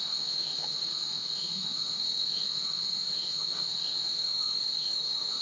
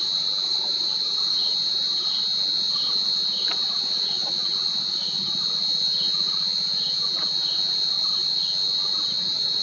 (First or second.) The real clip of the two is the second